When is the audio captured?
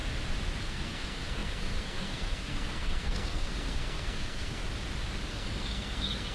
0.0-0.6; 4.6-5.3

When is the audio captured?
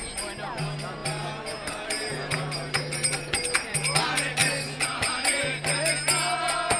0.0-6.8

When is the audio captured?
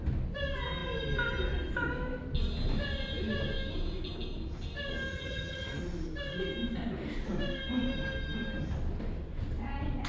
0.0-5.1; 5.8-10.1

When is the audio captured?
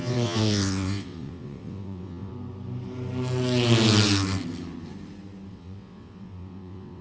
2.3-5.5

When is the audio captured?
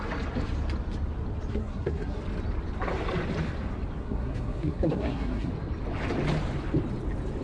0.0-1.5; 2.2-4.0; 5.5-7.4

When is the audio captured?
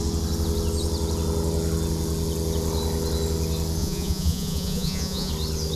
0.0-3.8; 5.3-5.8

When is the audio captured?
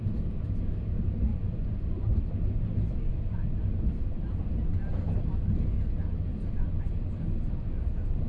0.0-1.3; 2.2-8.3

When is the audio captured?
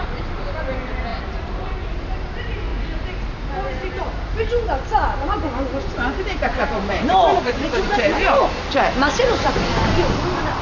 0.0-1.1; 2.0-6.5; 8.4-10.6